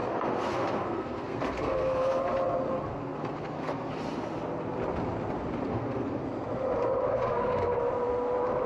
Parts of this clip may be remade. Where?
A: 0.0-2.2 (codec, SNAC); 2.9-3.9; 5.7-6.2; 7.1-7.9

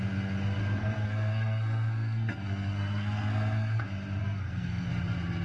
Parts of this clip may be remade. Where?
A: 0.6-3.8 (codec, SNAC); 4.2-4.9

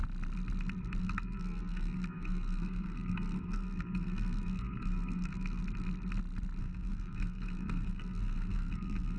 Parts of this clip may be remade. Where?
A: 1.0-5.6 (codec, SNAC); 6.6-9.2